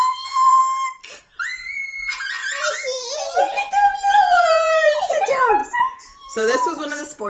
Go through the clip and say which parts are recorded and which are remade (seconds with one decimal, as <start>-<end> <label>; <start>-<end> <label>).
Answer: 0.0-0.6 remade; 0.6-1.2 recorded; 1.2-7.3 remade